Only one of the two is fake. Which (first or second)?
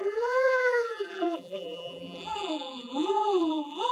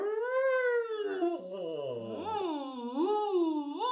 first